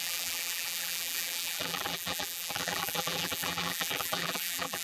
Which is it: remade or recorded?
remade